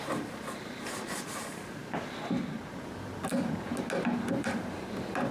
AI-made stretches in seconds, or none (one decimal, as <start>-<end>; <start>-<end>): 0.0-1.8; 4.3-5.3